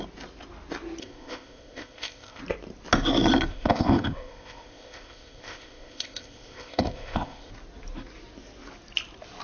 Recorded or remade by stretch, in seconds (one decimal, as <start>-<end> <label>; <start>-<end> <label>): 0.0-1.0 recorded; 1.0-2.4 remade; 2.4-3.5 recorded; 3.5-7.5 remade; 7.5-9.4 recorded